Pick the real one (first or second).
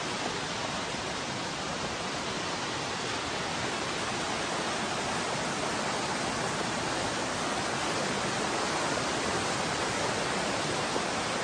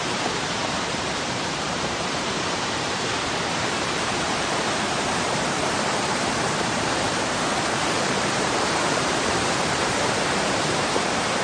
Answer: first